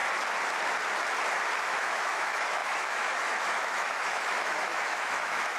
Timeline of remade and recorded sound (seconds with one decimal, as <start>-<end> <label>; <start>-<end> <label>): 0.0-1.6 recorded; 1.6-5.6 remade